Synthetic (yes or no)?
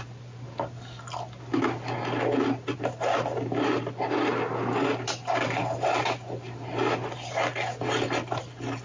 no